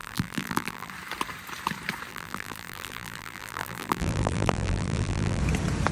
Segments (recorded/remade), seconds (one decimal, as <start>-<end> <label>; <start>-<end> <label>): 0.0-0.9 remade; 0.9-2.1 recorded; 2.1-5.4 remade; 5.4-5.9 recorded